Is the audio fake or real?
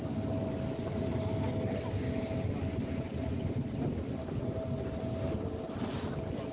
real